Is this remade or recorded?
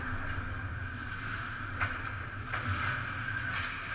recorded